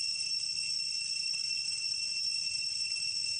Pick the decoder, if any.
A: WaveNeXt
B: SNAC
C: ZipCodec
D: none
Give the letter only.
D